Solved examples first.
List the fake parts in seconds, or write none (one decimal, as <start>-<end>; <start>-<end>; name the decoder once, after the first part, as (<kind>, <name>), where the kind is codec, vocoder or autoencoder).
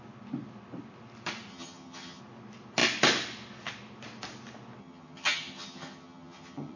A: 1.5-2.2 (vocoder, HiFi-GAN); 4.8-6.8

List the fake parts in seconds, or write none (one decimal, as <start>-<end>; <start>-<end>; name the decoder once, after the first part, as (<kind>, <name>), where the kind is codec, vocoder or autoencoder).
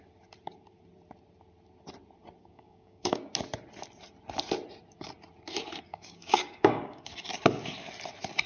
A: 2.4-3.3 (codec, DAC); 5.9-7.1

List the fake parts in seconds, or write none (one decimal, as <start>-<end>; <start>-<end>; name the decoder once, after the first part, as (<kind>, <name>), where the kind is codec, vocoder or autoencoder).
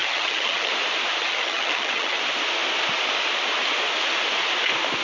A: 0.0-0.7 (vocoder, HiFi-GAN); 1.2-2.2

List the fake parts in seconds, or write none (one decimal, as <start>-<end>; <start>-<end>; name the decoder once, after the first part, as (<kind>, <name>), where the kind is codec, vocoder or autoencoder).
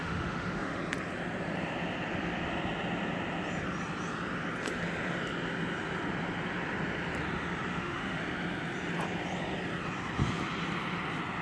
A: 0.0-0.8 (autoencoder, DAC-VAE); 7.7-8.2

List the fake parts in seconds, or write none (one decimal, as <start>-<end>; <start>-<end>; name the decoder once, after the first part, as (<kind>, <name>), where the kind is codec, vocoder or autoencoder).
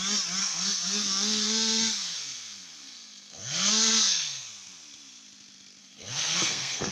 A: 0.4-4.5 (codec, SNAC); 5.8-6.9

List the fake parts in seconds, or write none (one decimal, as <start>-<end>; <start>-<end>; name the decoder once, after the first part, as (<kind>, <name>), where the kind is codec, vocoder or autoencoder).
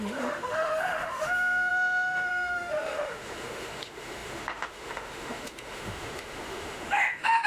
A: 0.0-7.5 (autoencoder, DAC-VAE)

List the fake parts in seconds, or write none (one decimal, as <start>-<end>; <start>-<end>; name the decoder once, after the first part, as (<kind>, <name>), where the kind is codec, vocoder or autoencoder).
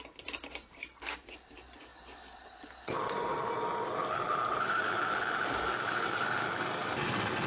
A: none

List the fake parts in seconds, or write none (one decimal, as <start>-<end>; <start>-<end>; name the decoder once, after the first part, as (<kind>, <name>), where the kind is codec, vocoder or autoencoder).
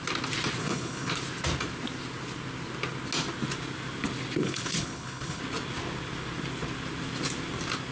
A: 0.6-1.1 (codec, HILCodec); 4.4-5.4